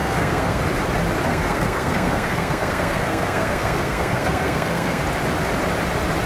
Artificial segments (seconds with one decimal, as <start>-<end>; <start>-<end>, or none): 0.0-0.6; 1.3-5.0